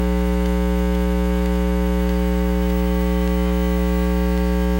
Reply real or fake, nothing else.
fake